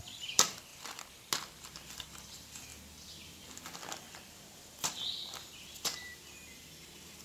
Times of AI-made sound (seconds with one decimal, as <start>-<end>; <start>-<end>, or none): 0.0-0.7; 1.6-2.7; 4.1-7.2